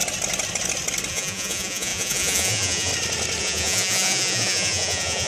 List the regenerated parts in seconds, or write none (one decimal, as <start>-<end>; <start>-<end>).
1.1-2.9; 3.4-5.3